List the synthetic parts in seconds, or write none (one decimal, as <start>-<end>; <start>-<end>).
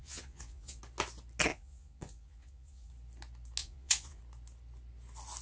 0.0-0.8; 1.5-2.9; 3.6-4.2